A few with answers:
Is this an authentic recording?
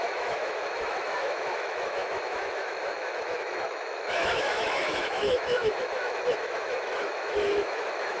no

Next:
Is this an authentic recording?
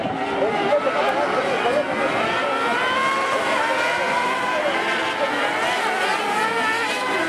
yes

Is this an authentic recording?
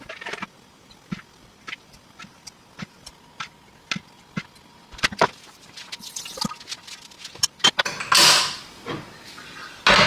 yes